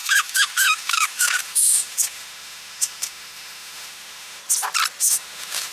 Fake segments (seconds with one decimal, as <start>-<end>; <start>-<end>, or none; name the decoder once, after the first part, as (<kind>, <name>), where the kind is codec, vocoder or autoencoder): 0.0-4.4 (autoencoder, DAC-VAE); 5.0-5.7